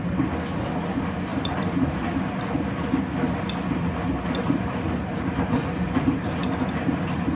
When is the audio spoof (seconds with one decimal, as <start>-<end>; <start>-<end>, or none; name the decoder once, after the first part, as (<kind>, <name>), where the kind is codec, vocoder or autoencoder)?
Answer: none